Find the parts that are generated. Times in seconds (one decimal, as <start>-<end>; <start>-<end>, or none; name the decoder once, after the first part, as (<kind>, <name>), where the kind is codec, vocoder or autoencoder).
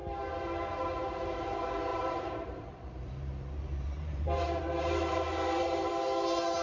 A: 1.9-5.9 (vocoder, BigVGAN v2)